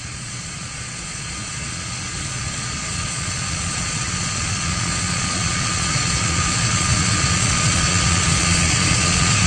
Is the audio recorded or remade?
remade